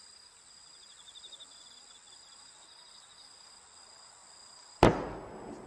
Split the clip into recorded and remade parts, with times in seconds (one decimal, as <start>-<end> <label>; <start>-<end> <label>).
0.0-5.7 recorded